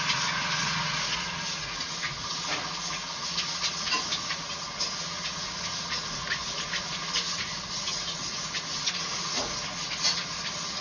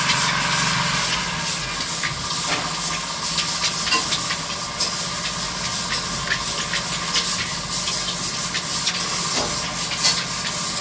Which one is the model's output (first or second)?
first